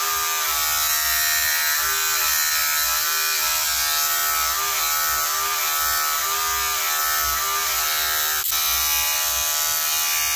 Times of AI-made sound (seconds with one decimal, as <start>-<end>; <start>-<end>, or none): none